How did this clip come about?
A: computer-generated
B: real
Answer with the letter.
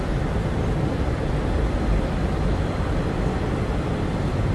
B